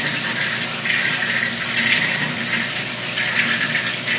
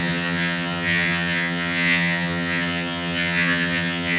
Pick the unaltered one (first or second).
first